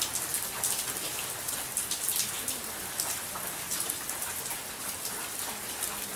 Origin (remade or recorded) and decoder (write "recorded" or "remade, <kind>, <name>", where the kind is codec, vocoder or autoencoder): recorded